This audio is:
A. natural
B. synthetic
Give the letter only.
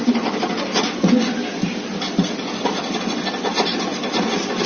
A